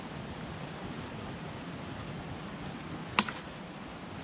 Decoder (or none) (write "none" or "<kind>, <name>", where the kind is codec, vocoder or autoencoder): none